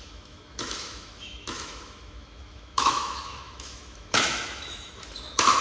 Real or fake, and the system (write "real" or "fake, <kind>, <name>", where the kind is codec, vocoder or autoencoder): fake, autoencoder, DAC-VAE